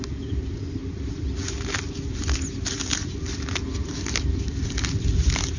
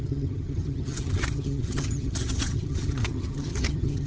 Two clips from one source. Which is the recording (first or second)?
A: first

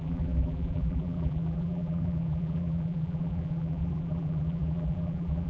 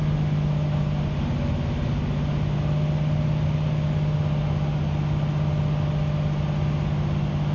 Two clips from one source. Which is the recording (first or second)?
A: second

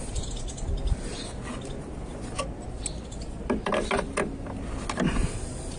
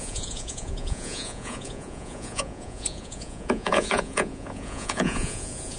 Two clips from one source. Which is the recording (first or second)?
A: first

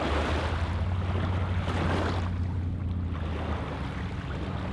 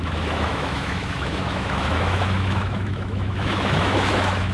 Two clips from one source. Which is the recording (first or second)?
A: first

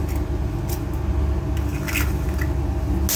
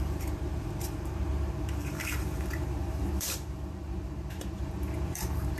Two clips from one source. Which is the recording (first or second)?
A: first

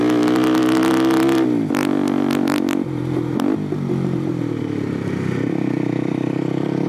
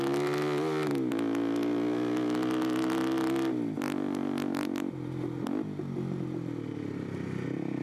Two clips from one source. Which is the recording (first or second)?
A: second